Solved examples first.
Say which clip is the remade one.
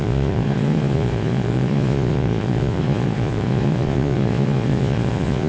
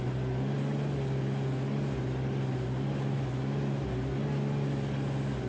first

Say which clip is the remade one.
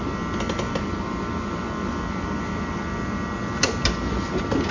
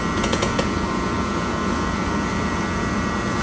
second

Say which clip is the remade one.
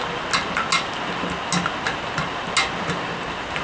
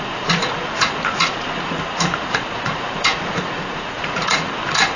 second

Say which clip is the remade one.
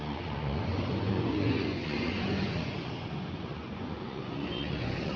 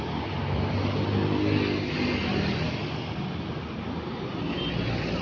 first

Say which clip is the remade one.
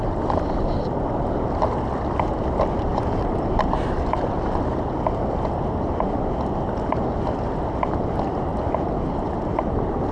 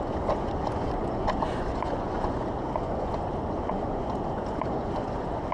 second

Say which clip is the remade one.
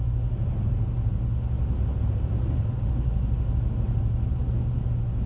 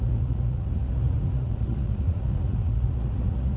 second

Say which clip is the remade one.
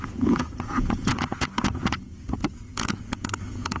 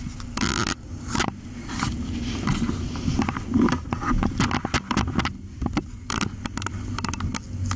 first